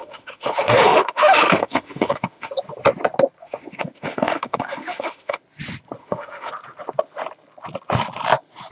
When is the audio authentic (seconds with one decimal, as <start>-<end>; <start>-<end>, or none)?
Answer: 2.5-3.4; 5.4-6.0; 6.5-8.7